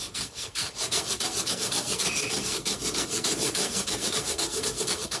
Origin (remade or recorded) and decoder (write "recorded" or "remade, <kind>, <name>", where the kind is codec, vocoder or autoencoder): remade, codec, SNAC